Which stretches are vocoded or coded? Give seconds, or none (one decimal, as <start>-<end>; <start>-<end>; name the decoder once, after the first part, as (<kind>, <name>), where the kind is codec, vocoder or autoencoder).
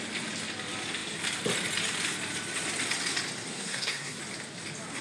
3.5-4.2 (codec, SNAC)